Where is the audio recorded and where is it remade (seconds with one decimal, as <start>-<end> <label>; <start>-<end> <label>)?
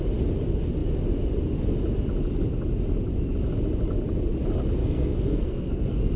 0.0-4.8 recorded; 4.8-6.2 remade